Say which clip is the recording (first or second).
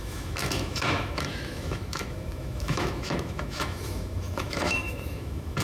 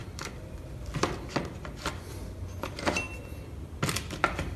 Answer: second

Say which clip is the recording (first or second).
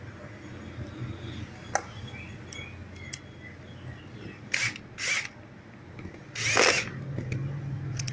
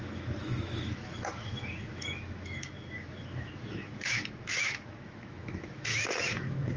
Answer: first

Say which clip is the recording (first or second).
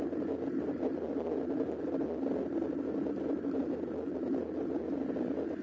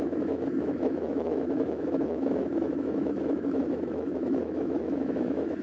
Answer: first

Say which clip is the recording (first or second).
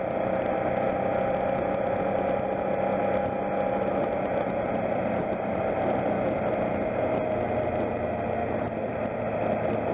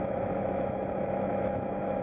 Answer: first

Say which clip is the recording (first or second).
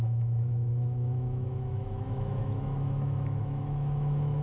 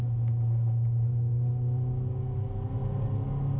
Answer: second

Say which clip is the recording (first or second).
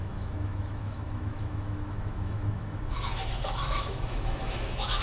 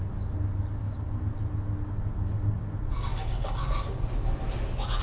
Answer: second